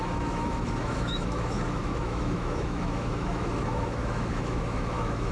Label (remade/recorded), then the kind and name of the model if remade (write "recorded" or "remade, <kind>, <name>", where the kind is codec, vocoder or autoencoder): remade, autoencoder, DAC-VAE